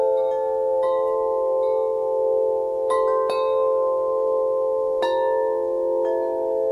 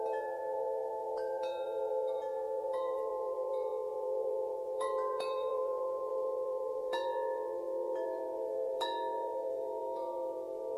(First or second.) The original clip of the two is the first